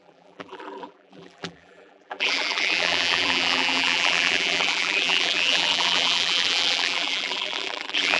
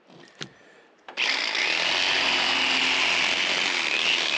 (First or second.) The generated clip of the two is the first